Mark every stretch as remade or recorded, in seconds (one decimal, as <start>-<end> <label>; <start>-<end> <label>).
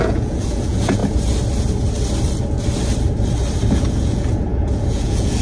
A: 0.0-1.0 remade; 1.0-3.7 recorded; 3.7-5.4 remade